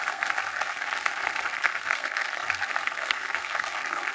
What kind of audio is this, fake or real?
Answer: fake